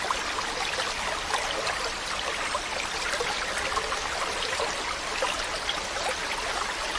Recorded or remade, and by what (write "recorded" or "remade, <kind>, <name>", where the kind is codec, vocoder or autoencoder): remade, vocoder, BigVGAN v2